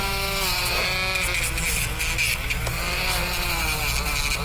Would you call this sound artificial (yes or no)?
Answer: no